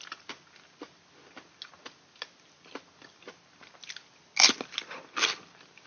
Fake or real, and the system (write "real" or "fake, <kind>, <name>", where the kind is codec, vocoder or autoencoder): real